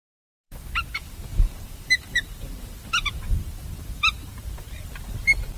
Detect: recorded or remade remade